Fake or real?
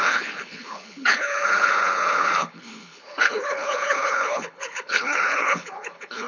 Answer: fake